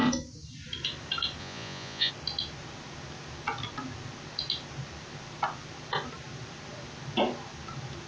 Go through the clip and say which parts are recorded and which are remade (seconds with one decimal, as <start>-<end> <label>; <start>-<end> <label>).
0.0-1.4 recorded; 1.4-2.1 remade; 2.1-8.1 recorded